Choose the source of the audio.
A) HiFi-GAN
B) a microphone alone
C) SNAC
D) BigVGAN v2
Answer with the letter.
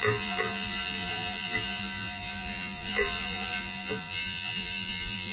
D